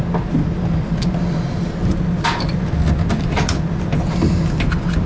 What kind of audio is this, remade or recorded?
recorded